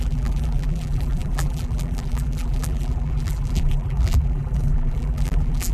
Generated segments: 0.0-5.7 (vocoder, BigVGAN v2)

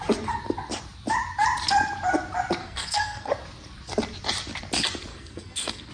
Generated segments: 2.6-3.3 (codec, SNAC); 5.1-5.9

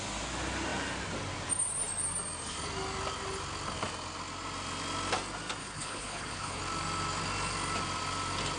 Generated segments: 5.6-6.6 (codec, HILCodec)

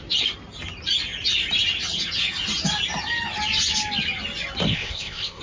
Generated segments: 4.7-5.4 (codec, ZipCodec)